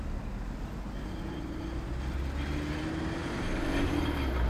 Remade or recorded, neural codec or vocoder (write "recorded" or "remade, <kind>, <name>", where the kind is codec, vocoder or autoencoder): recorded